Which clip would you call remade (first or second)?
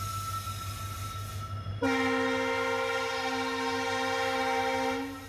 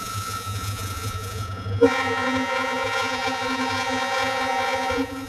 second